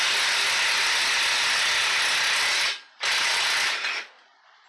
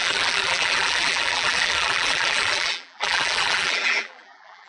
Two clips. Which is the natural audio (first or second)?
first